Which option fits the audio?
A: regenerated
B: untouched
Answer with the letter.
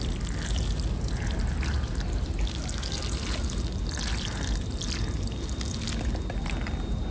B